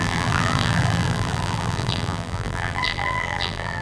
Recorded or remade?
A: remade